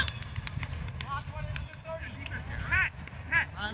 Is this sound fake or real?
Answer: real